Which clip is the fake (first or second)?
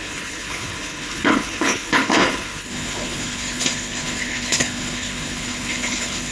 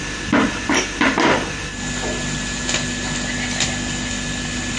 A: first